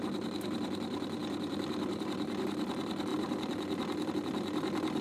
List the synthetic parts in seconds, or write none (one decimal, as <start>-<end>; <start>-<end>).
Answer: 3.1-4.1